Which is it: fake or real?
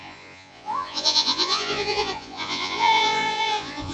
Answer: fake